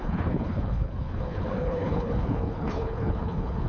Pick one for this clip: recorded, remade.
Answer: remade